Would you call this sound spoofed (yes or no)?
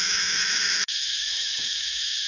yes